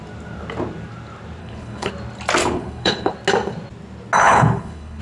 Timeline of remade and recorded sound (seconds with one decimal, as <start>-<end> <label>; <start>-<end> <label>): 0.0-1.4 recorded; 1.4-1.9 remade; 1.9-2.4 recorded; 2.4-3.1 remade; 3.1-4.2 recorded; 4.2-5.0 remade